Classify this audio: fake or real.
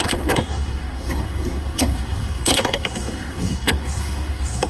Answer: fake